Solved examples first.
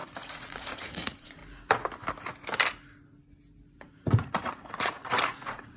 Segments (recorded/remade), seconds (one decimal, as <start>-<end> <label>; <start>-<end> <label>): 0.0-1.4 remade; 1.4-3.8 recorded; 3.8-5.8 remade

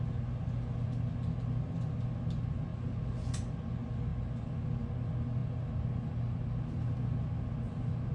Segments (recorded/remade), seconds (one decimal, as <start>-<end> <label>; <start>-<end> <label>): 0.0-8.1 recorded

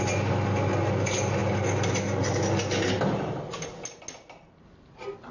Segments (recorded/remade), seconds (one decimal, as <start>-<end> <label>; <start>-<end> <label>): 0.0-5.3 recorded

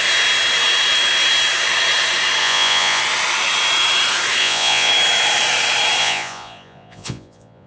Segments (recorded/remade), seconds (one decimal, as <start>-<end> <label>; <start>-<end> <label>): 0.0-2.4 recorded; 2.4-3.0 remade; 3.0-4.4 recorded; 4.4-4.9 remade; 4.9-6.0 recorded; 6.0-7.7 remade

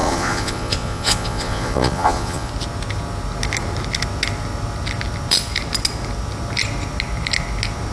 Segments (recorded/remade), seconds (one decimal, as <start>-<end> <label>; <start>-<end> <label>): 0.0-2.5 remade; 2.5-7.9 recorded

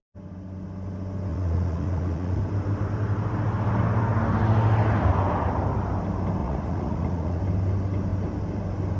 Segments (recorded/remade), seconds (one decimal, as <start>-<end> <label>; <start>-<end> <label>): 0.0-1.3 recorded; 1.3-2.4 remade; 2.4-6.4 recorded; 6.4-7.4 remade; 7.4-9.0 recorded